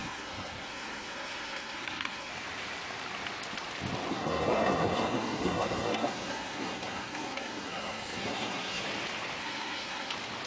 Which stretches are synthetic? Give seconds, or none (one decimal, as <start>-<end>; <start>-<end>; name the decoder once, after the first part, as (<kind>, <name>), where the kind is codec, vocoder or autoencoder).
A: 0.0-2.3 (codec, SNAC); 4.1-8.8; 9.4-10.1